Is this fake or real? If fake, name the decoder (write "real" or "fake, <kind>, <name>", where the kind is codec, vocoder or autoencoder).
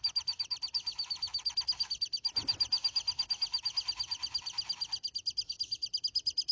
real